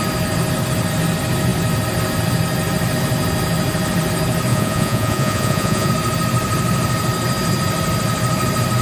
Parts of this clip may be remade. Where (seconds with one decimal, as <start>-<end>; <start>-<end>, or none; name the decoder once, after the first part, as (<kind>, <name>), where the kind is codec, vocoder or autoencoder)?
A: 4.5-5.9 (vocoder, Vocos)